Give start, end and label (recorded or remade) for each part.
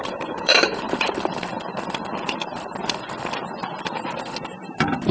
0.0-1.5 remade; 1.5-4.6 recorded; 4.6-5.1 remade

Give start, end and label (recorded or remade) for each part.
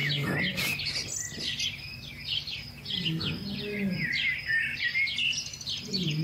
0.0-1.9 recorded; 1.9-2.8 remade; 2.8-6.2 recorded